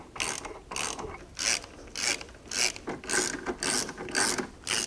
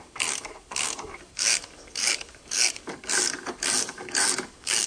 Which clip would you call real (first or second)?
first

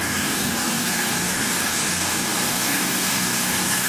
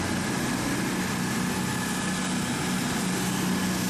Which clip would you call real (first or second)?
second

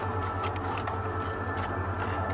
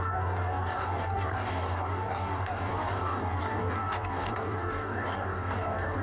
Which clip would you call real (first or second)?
first